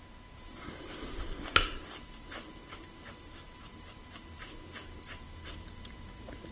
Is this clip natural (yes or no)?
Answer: no